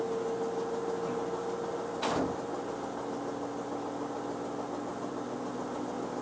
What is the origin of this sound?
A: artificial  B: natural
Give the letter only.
B